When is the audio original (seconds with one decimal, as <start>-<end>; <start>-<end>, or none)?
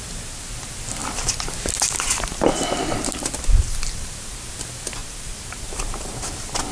0.0-1.0; 4.5-5.0; 6.3-6.7